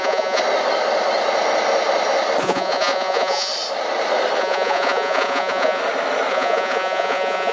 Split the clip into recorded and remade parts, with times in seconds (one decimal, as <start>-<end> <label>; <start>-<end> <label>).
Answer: 0.0-0.4 remade; 0.4-2.4 recorded; 2.4-3.5 remade; 3.5-4.4 recorded; 4.4-5.8 remade; 5.8-6.3 recorded; 6.3-7.5 remade